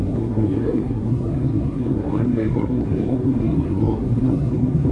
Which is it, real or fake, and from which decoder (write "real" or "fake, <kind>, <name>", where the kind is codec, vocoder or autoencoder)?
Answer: fake, codec, SNAC